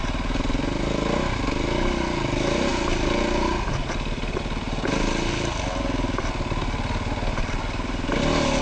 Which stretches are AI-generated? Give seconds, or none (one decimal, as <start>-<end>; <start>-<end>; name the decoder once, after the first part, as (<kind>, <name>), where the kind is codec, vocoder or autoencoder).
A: none